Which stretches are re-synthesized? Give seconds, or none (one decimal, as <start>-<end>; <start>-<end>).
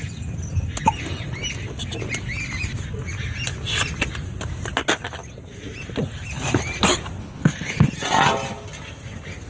7.2-7.9